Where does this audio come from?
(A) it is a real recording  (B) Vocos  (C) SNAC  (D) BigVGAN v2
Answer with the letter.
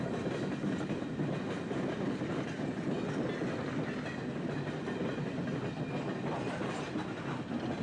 A